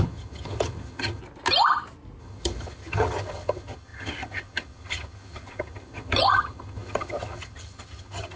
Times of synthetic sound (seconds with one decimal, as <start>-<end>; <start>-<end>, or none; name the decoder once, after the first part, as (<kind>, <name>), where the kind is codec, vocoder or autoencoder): 0.0-1.2 (vocoder, HiFi-GAN); 2.2-8.4